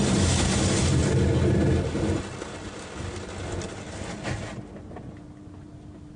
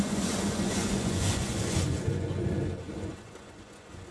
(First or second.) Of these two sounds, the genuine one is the first